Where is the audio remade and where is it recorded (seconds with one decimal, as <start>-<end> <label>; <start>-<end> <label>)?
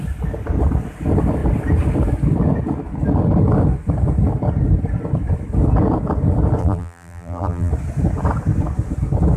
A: 0.0-6.6 recorded; 6.6-7.7 remade; 7.7-9.4 recorded